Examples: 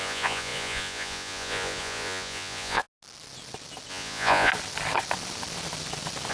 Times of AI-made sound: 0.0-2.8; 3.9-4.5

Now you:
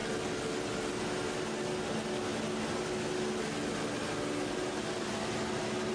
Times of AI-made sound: none